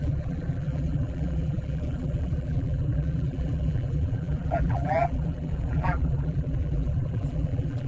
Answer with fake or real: fake